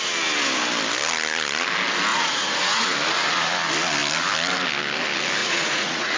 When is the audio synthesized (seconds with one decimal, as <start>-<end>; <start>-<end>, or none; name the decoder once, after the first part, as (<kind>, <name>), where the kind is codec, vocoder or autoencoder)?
2.1-2.8 (vocoder, Vocos); 5.4-6.2